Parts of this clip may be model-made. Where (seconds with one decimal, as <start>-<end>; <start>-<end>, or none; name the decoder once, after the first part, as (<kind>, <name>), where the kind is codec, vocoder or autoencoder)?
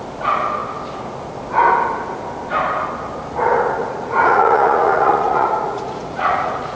3.8-6.8 (vocoder, Vocos)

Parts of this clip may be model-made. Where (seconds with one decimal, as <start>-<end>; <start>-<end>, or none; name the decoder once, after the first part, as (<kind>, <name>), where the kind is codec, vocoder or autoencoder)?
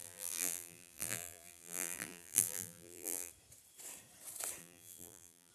0.0-3.3 (vocoder, BigVGAN v2); 4.6-5.5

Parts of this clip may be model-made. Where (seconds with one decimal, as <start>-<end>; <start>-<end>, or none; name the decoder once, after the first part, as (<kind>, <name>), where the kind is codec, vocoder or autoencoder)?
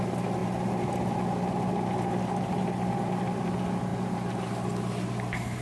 none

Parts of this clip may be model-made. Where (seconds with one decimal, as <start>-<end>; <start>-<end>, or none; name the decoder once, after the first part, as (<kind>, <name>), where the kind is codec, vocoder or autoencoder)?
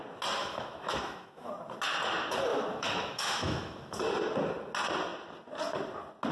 0.4-1.5 (autoencoder, DAC-VAE); 2.5-4.0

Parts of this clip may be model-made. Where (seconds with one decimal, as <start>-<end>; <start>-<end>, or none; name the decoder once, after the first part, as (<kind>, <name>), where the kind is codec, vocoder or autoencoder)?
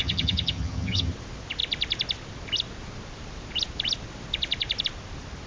0.0-1.1 (vocoder, HiFi-GAN)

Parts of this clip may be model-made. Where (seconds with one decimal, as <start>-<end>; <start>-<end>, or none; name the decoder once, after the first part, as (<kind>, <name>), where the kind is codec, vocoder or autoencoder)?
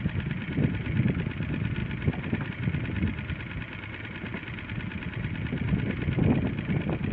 none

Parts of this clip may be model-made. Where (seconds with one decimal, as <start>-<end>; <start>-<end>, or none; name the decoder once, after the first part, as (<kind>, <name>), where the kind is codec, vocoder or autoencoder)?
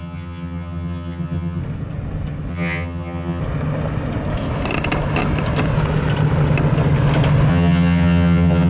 0.0-1.6 (vocoder, HiFi-GAN); 2.5-3.4; 7.5-8.7